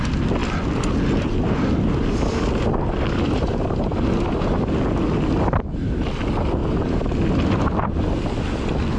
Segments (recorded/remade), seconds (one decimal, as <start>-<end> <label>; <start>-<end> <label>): 0.0-9.0 recorded

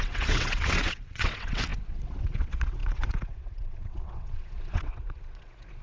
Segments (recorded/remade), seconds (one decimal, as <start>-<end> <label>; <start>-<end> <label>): 0.0-5.8 remade

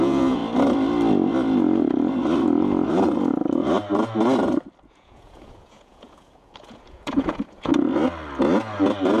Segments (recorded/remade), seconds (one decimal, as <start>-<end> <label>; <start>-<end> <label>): 0.0-0.4 remade; 0.4-4.9 recorded; 4.9-7.7 remade; 7.7-9.2 recorded

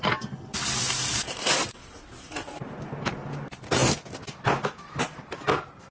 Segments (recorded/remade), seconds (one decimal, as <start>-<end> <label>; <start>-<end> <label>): 0.0-5.9 recorded